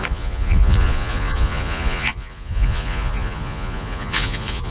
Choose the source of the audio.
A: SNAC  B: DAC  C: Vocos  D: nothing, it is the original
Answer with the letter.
C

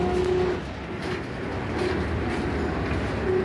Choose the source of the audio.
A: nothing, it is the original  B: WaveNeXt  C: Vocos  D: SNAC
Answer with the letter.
A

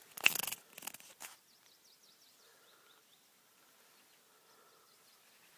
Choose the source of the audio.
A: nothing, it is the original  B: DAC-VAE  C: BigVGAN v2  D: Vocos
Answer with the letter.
A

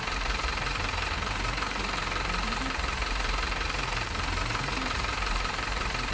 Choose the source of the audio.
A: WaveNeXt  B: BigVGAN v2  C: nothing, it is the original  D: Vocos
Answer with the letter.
B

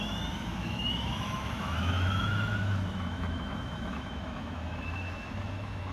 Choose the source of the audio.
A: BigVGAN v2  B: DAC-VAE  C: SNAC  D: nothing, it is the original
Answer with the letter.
B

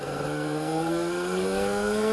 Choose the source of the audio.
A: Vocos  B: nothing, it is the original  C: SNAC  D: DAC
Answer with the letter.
C